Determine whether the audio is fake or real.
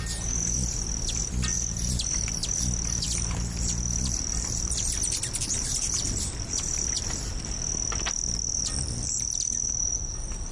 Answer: real